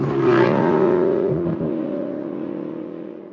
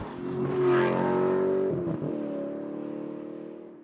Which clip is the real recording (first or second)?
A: second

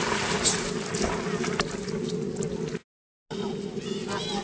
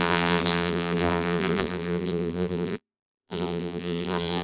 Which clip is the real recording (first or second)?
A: first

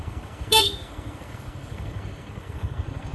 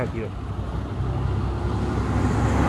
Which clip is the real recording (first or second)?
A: second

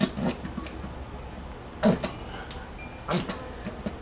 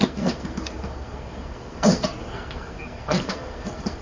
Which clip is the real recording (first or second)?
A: first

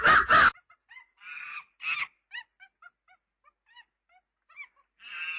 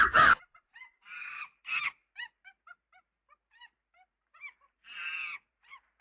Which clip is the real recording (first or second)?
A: first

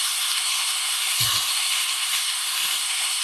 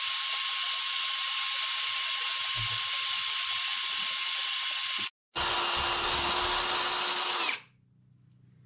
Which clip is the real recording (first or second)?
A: second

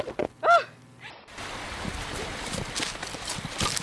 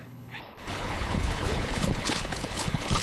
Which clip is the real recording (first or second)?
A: first